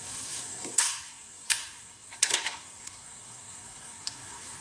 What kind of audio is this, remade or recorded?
remade